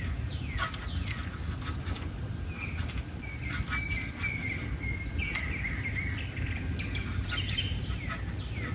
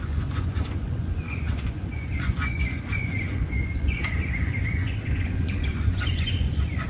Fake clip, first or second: second